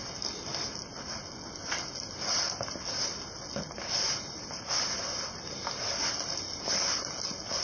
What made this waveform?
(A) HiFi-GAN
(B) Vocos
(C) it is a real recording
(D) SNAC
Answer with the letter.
C